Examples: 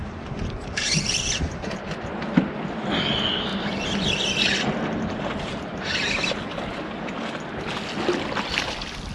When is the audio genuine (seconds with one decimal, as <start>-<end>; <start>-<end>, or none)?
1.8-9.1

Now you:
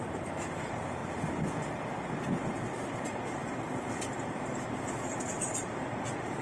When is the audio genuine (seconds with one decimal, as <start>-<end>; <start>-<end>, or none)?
1.0-1.9

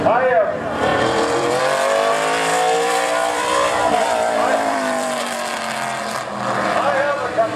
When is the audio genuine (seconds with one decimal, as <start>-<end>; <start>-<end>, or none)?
0.0-0.9; 1.6-2.5; 5.2-7.6

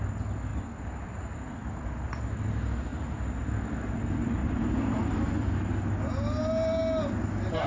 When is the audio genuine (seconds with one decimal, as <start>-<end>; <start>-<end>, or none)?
0.0-1.6; 2.2-4.4; 6.1-7.7

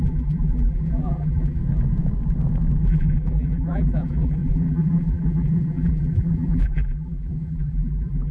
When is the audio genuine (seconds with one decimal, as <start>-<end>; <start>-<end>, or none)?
1.6-2.8

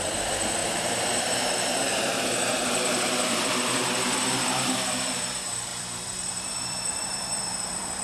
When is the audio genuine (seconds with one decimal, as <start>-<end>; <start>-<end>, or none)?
none